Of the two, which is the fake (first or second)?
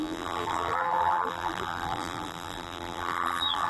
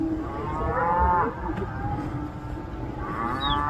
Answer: first